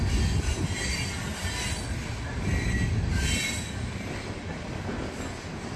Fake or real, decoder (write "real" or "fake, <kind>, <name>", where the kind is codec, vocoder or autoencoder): real